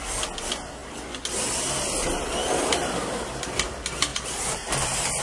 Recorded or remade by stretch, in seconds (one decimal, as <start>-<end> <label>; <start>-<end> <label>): 0.0-4.1 recorded; 4.1-5.2 remade